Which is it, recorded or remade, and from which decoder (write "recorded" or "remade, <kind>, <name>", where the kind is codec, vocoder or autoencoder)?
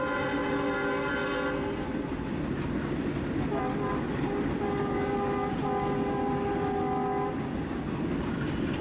recorded